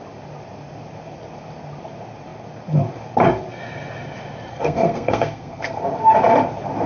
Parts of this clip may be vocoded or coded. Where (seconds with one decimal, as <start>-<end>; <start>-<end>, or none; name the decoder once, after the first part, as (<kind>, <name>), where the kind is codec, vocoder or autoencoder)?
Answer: 4.5-5.8 (codec, SNAC)